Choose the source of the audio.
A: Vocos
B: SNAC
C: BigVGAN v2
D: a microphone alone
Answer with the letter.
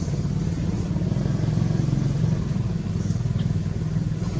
D